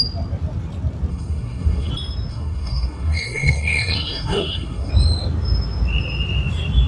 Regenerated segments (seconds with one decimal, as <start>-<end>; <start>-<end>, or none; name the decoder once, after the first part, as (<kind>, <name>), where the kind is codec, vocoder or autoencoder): 1.1-1.9 (codec, SNAC); 2.3-4.9